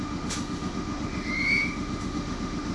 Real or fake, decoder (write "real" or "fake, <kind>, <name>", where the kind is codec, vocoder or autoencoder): fake, autoencoder, DAC-VAE